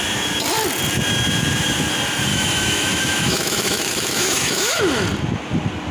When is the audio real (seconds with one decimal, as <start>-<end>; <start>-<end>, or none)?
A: 0.0-2.3; 4.8-5.9